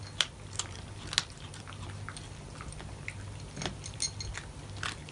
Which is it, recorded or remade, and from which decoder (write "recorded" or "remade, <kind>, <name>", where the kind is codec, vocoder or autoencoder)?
recorded